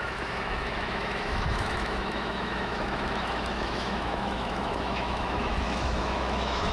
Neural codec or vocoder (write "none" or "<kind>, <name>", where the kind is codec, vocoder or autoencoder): autoencoder, DAC-VAE